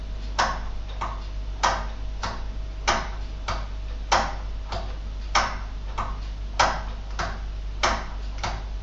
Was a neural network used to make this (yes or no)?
no